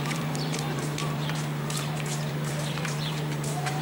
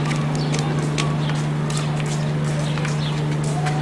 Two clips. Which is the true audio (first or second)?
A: second